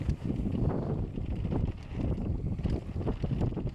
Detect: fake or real real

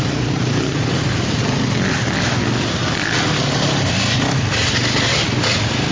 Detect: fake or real real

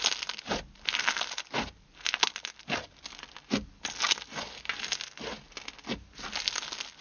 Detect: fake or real real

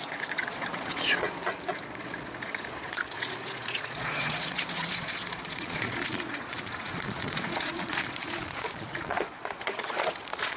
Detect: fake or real fake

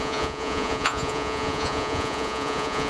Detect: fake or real fake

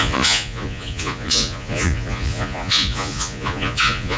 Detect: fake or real fake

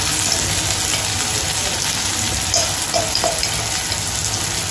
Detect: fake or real real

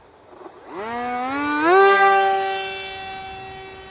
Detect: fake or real real